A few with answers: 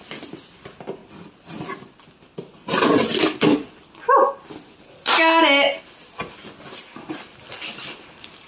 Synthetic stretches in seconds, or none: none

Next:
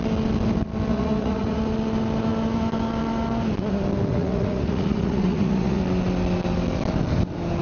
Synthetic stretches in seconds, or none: 0.9-1.6 (vocoder, Vocos); 4.1-5.8

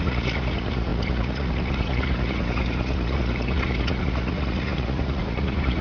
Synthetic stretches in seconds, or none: 0.0-5.8 (vocoder, Vocos)

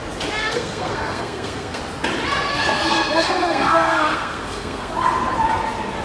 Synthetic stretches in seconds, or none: 0.4-1.8 (codec, SNAC); 2.5-4.9

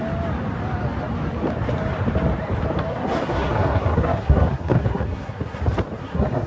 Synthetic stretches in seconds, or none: 2.9-5.6 (codec, SNAC); 6.0-6.5

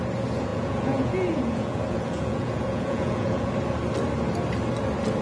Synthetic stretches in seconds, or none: 0.5-3.5 (vocoder, Vocos)

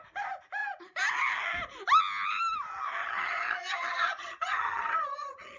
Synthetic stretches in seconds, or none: 3.0-5.6 (vocoder, HiFi-GAN)